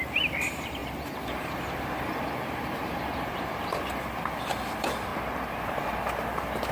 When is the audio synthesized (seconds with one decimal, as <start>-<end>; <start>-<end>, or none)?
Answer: 0.0-5.1; 5.7-6.7